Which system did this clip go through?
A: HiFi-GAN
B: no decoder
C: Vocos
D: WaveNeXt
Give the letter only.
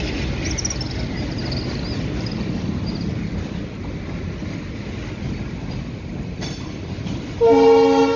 B